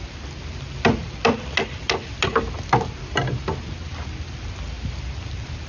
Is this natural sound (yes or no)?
yes